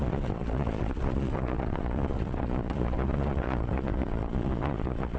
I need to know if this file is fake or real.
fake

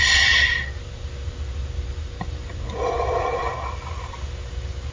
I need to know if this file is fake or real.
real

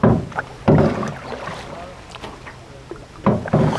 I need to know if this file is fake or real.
real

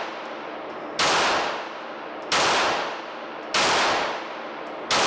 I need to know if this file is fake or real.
real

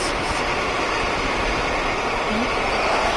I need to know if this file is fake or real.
real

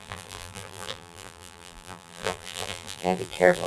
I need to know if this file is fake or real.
fake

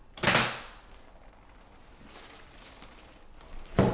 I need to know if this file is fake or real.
real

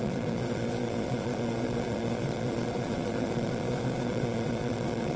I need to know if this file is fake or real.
fake